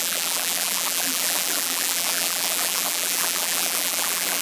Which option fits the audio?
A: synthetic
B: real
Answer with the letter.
A